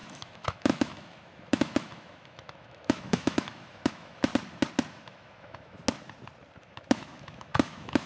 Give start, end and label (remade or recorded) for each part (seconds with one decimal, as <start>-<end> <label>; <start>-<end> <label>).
0.0-4.3 remade; 4.3-4.9 recorded; 4.9-5.8 remade; 5.8-6.6 recorded; 6.6-8.1 remade